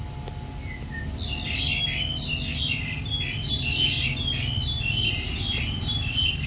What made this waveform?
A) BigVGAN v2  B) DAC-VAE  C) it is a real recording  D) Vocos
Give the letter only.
C